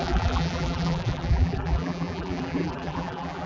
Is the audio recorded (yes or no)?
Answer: no